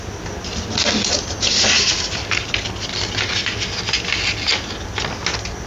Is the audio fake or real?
real